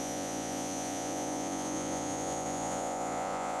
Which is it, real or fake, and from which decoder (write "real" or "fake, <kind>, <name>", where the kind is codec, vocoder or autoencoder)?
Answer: fake, vocoder, Vocos